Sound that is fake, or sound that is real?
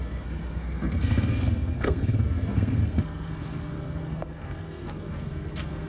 fake